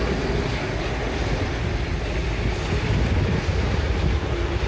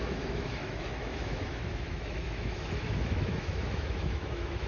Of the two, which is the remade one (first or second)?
second